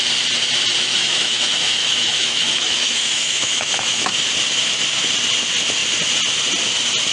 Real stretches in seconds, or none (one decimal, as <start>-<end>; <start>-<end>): 0.0-0.9; 4.2-7.1

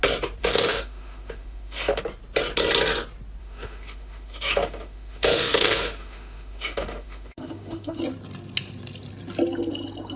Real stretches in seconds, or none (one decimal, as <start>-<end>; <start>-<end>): 0.0-0.4; 2.0-3.4; 8.0-10.2

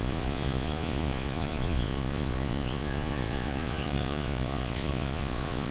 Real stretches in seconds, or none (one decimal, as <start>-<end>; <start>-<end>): none

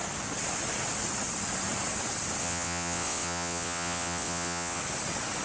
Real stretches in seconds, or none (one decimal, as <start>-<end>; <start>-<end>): 0.0-2.4; 4.8-5.4

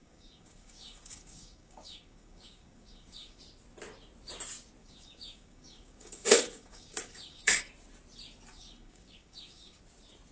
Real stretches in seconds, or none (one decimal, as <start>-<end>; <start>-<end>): 3.4-4.8; 7.6-8.5; 9.8-10.3